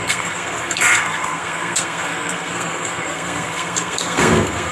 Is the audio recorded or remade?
remade